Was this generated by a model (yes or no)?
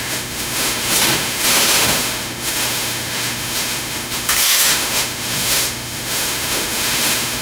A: yes